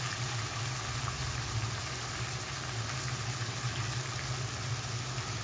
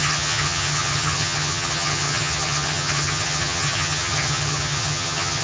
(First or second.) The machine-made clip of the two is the second